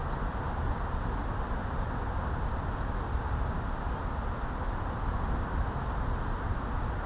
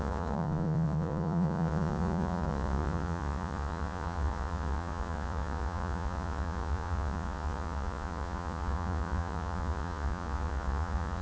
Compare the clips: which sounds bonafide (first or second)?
first